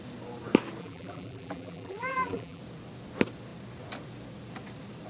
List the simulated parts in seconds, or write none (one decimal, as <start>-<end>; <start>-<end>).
0.8-2.6